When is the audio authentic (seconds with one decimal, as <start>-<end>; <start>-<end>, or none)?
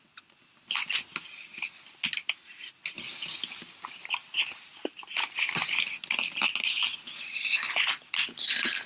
0.0-8.9